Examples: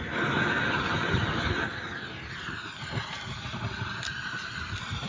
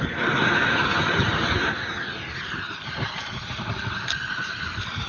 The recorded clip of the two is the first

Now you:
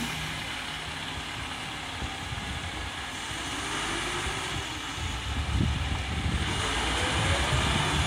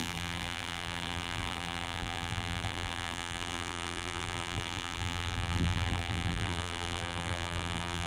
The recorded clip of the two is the first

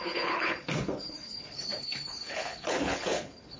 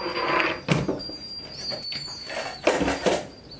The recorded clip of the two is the second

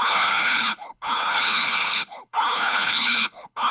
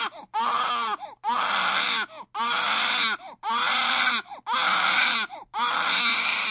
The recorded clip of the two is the second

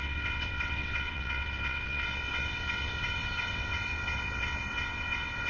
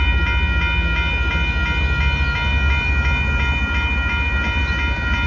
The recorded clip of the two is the second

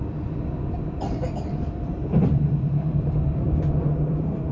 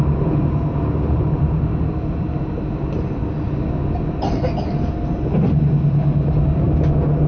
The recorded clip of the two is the second